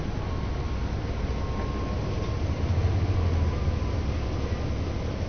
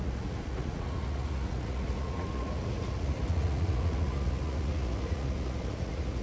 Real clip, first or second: first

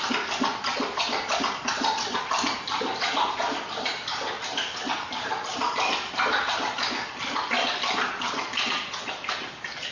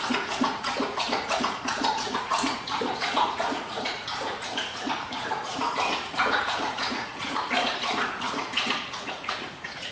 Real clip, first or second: first